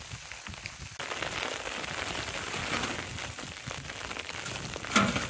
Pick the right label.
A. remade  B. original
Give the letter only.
B